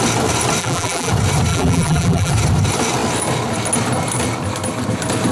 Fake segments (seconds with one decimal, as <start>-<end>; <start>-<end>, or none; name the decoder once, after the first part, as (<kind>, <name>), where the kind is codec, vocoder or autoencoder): 0.6-1.1 (vocoder, BigVGAN v2); 1.5-2.3